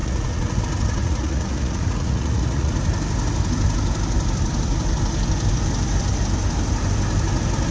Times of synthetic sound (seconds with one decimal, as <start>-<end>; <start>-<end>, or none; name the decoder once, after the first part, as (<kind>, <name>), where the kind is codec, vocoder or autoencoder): 0.0-0.6 (vocoder, Vocos); 1.0-2.7